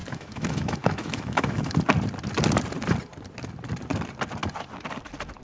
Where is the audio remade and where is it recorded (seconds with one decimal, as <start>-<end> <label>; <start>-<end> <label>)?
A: 0.0-1.7 remade; 1.7-5.4 recorded